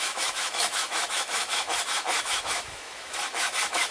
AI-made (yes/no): yes